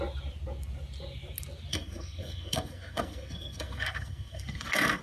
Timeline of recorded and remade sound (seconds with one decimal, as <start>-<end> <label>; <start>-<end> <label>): 0.0-1.7 recorded; 1.7-5.0 remade